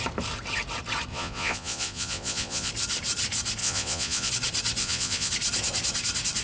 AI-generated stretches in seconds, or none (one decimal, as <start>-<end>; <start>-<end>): 1.1-2.7; 3.6-4.3; 4.8-5.3